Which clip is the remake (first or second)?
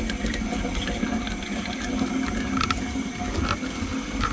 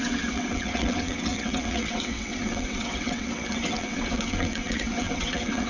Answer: second